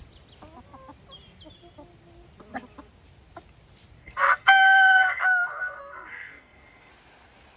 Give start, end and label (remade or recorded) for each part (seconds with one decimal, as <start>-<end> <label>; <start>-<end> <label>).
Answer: 0.0-4.0 recorded; 4.0-6.9 remade; 6.9-7.6 recorded